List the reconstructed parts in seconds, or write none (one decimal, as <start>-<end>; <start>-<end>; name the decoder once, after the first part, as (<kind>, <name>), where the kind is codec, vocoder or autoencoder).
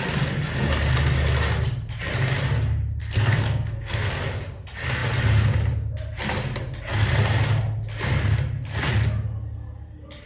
3.0-4.1 (codec, SNAC)